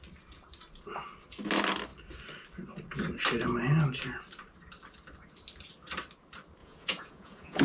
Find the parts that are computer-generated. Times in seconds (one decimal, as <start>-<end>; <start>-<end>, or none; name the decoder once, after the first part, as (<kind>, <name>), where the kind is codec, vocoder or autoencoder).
6.6-7.6 (vocoder, Vocos)